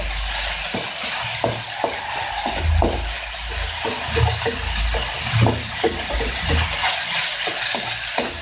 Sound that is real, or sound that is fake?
real